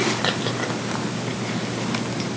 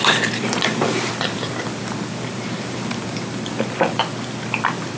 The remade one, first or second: second